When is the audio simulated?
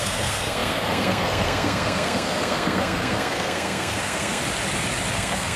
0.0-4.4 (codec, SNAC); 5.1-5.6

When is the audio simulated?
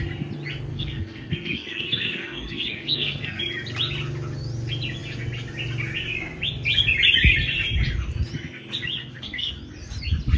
0.7-3.4 (codec, SNAC); 9.0-9.5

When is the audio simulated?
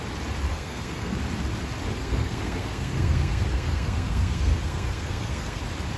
0.5-1.2 (codec, SNAC); 2.0-5.6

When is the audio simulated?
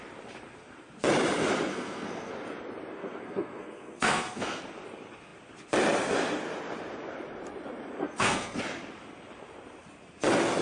1.7-2.3 (codec, SNAC); 3.0-4.6; 8.0-8.6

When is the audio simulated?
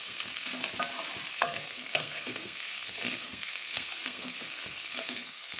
0.0-0.6 (codec, SNAC); 1.3-5.6